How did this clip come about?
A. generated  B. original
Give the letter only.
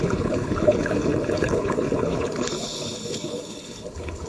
A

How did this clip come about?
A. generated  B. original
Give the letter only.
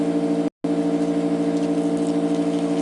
B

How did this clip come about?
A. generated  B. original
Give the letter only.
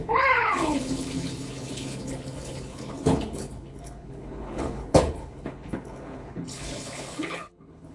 A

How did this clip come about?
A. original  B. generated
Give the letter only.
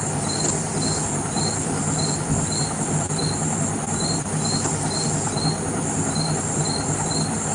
A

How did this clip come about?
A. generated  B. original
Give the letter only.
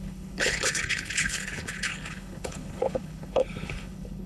A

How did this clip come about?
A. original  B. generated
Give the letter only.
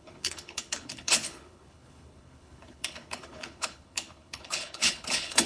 B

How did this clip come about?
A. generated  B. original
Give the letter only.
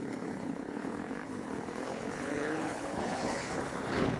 A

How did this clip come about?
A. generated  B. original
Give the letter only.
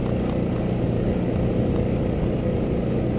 B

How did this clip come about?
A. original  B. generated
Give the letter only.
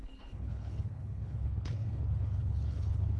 B